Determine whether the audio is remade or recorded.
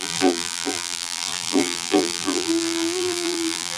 remade